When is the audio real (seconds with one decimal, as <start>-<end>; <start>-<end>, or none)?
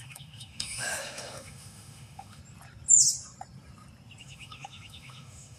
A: 2.4-4.2